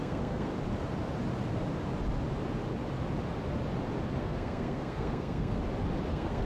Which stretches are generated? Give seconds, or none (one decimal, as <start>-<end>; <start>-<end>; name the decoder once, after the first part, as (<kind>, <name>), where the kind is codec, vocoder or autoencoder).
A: 0.0-0.5 (codec, SNAC); 4.2-5.6; 6.1-6.5